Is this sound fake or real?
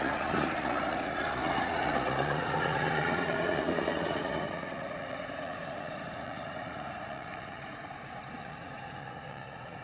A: fake